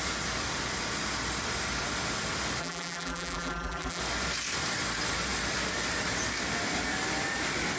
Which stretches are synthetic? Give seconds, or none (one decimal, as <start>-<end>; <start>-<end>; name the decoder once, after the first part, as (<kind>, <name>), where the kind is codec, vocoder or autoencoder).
2.6-4.0 (vocoder, BigVGAN v2)